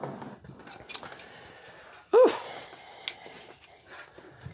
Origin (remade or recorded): recorded